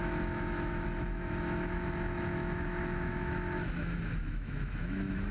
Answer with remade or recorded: remade